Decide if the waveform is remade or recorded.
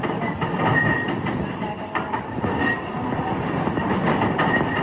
remade